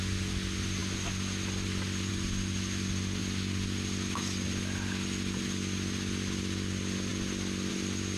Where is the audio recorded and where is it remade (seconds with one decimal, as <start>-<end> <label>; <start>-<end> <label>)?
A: 0.0-8.2 recorded